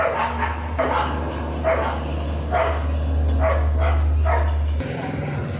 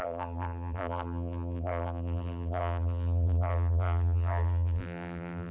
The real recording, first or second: first